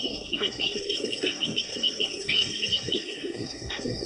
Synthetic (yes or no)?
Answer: yes